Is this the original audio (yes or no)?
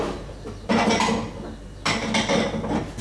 yes